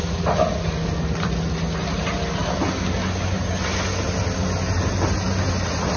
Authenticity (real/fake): real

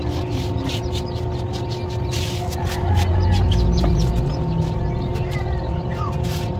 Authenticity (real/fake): real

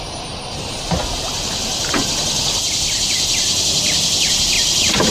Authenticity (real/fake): real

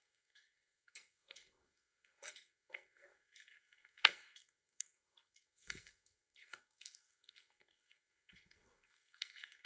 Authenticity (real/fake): fake